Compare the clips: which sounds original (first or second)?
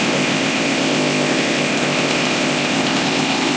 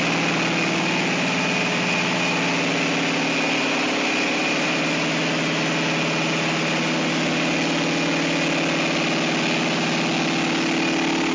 second